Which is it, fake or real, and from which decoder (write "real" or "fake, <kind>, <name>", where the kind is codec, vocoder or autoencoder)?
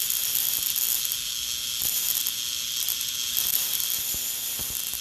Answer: real